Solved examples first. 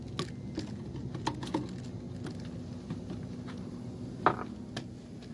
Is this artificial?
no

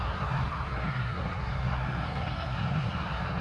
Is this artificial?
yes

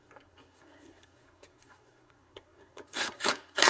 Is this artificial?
yes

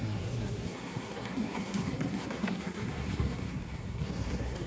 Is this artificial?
yes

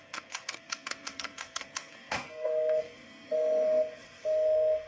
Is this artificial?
yes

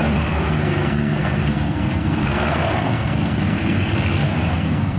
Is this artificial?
yes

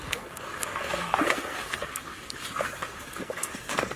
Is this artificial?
yes